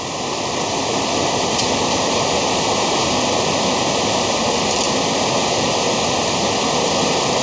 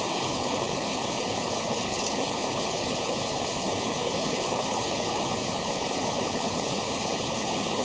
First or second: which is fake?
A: second